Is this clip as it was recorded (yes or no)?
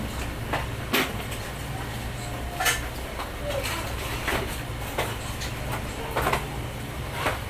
yes